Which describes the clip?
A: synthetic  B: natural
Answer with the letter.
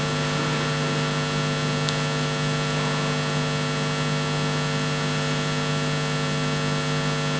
B